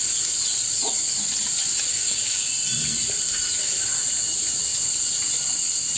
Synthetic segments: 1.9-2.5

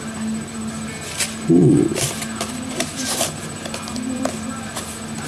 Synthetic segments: 1.6-4.8

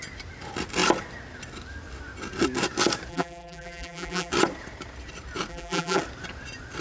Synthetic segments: 3.1-4.3; 5.5-6.0